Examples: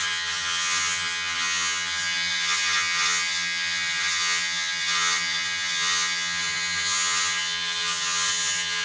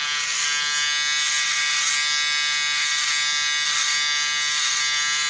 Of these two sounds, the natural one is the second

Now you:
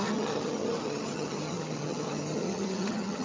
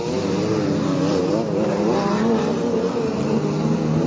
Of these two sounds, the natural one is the second